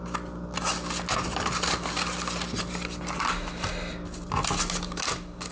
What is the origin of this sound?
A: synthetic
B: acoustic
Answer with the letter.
B